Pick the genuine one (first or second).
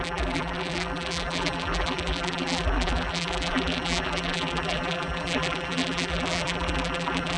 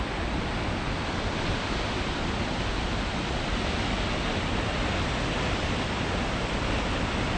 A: second